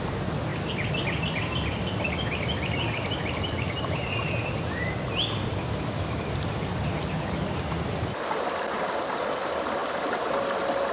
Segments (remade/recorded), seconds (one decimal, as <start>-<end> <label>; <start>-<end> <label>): 0.0-0.5 recorded; 0.5-5.5 remade; 5.5-9.8 recorded; 9.8-10.9 remade